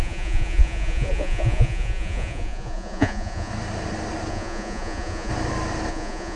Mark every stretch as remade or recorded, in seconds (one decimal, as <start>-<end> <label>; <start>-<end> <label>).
0.0-3.5 remade; 3.5-4.3 recorded; 4.3-5.3 remade; 5.3-5.9 recorded; 5.9-6.4 remade